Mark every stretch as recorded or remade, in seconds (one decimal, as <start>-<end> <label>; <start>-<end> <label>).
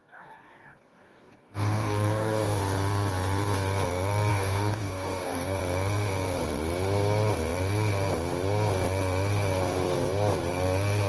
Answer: 0.0-2.6 remade; 2.6-4.3 recorded; 4.3-5.6 remade; 5.6-11.1 recorded